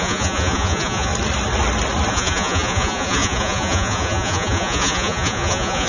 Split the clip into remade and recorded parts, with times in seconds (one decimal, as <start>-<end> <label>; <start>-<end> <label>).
0.0-1.1 remade; 1.1-2.1 recorded; 2.1-5.9 remade